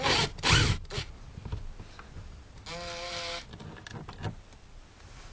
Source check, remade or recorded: recorded